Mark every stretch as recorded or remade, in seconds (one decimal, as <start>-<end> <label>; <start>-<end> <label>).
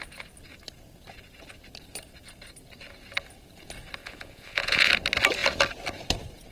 0.0-4.0 recorded; 4.0-4.9 remade; 4.9-6.5 recorded